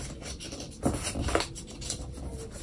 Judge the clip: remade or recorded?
recorded